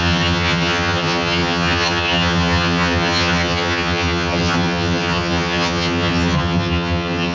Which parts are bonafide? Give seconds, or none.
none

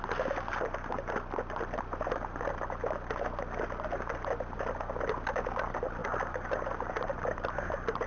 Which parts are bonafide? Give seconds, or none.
0.0-8.1

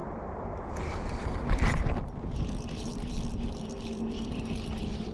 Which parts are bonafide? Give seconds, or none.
0.0-0.8

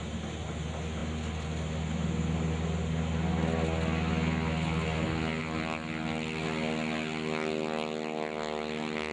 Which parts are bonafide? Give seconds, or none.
0.0-9.1

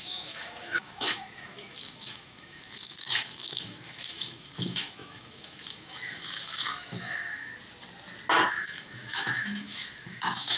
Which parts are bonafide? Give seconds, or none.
7.5-8.5

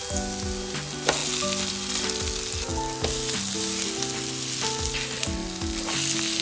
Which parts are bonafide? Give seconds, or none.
0.0-6.4

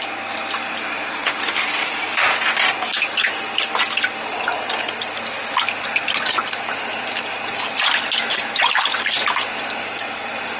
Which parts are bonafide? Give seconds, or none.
0.0-10.6

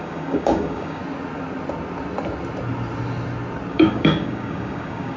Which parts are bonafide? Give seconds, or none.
1.0-3.7